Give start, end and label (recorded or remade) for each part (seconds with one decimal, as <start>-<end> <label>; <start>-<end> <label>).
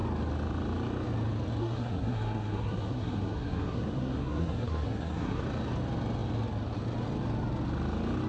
0.0-1.6 recorded; 1.6-5.4 remade; 5.4-8.3 recorded